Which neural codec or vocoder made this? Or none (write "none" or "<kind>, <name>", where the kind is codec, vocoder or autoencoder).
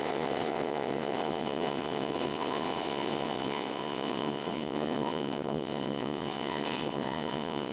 vocoder, WaveNeXt